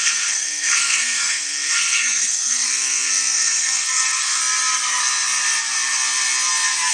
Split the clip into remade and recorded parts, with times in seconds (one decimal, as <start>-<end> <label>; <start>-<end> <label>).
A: 0.0-4.4 remade; 4.4-6.9 recorded